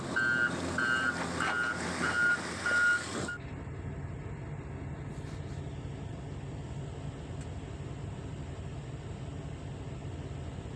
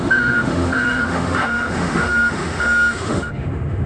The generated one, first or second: second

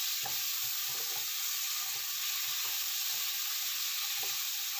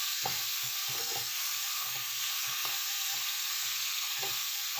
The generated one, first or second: second